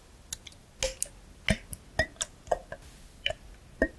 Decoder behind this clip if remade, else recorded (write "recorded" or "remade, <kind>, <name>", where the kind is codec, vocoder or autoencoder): recorded